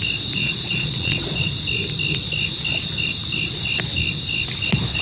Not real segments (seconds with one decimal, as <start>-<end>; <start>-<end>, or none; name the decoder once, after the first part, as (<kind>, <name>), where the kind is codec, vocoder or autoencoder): 0.4-1.4 (vocoder, Vocos)